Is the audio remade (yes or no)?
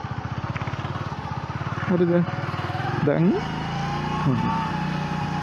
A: no